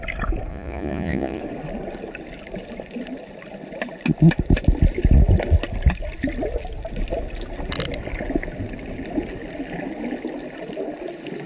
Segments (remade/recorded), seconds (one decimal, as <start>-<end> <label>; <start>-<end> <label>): 0.0-0.5 recorded; 0.5-1.4 remade; 1.4-11.5 recorded